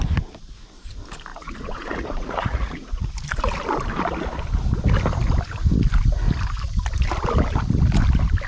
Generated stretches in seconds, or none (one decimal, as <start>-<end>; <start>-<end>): 1.3-3.1